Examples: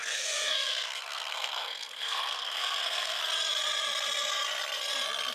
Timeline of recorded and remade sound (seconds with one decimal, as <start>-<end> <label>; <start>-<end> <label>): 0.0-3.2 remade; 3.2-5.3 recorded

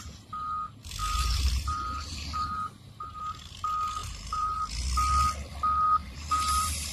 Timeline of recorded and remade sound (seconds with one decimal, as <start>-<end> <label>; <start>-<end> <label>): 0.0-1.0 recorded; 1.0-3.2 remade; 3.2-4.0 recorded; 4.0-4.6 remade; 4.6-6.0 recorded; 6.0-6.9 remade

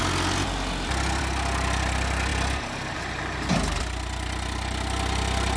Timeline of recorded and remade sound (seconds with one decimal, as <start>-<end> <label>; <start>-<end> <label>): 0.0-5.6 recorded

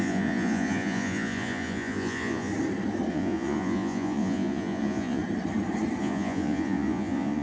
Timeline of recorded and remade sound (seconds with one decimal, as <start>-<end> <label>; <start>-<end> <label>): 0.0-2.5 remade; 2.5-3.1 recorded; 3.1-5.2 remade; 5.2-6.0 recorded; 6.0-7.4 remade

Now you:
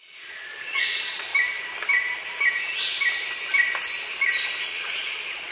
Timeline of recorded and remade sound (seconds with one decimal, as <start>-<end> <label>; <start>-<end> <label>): 0.0-1.3 remade; 1.3-4.6 recorded; 4.6-5.5 remade

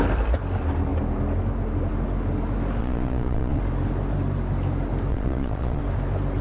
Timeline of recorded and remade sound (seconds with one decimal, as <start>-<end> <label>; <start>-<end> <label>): 0.0-2.8 recorded; 2.8-3.6 remade; 3.6-5.1 recorded; 5.1-5.8 remade; 5.8-6.4 recorded